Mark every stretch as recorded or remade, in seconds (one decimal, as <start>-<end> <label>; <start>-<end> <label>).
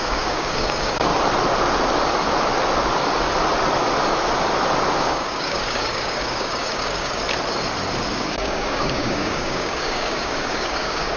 0.0-1.1 remade; 1.1-5.0 recorded; 5.0-7.2 remade; 7.2-8.1 recorded; 8.1-11.2 remade